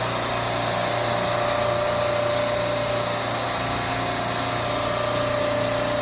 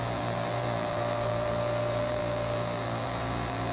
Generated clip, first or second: second